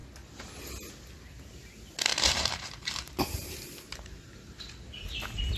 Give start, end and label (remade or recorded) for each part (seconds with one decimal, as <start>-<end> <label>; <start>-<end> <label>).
0.0-2.1 recorded; 2.1-4.6 remade; 4.6-5.6 recorded

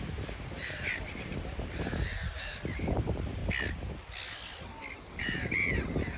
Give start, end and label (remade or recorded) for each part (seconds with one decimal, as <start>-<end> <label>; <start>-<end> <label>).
0.0-3.4 remade; 3.4-4.9 recorded; 4.9-6.2 remade

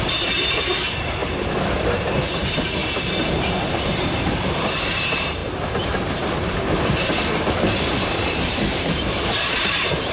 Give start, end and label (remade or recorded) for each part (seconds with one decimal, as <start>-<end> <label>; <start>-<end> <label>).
0.0-10.1 remade

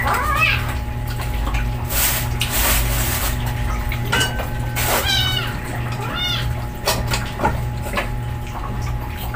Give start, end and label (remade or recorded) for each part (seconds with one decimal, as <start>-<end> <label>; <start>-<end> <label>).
0.0-9.4 recorded

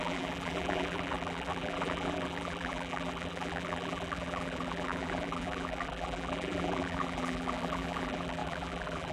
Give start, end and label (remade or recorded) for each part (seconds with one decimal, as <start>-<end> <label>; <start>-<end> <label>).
0.0-9.1 remade

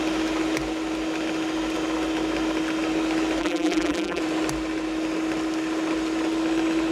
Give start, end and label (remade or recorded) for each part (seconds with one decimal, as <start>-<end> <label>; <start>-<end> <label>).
0.0-3.4 recorded; 3.4-4.2 remade; 4.2-6.9 recorded